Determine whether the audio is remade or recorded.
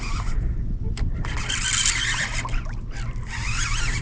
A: recorded